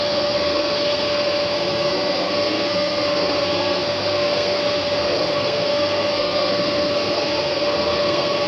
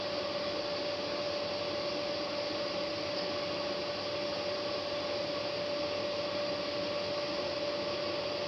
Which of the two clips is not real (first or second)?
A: first